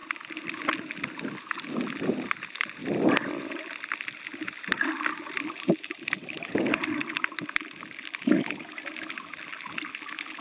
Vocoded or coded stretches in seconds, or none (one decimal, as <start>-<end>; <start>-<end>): none